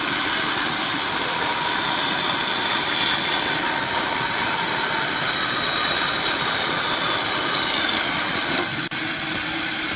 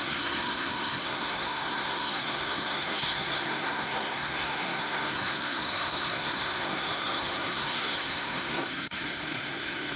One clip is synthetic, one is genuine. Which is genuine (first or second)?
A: first